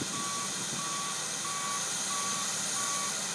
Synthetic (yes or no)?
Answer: no